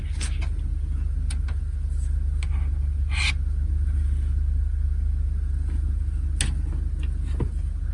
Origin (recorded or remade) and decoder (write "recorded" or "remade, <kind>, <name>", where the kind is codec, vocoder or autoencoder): recorded